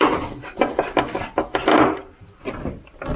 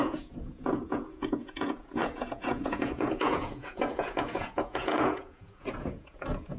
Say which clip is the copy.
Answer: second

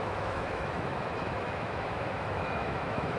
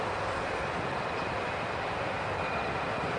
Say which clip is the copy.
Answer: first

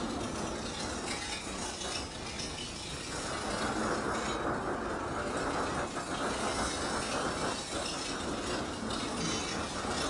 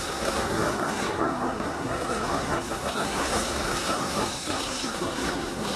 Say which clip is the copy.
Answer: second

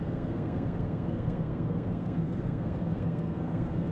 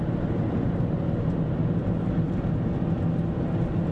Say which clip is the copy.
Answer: first